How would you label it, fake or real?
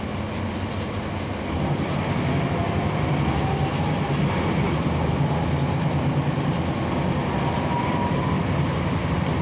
real